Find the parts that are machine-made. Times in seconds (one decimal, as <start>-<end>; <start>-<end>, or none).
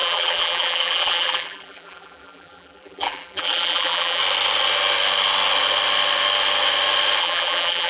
0.0-4.2; 7.2-7.9